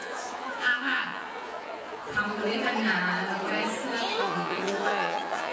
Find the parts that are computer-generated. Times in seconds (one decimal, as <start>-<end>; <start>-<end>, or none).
0.0-2.0; 4.2-5.5